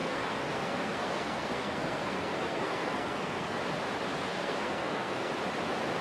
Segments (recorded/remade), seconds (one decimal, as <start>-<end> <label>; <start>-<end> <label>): 0.0-3.6 remade; 3.6-4.3 recorded; 4.3-5.3 remade; 5.3-6.0 recorded